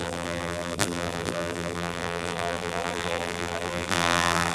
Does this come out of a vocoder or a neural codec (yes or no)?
yes